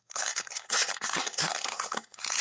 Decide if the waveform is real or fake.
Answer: fake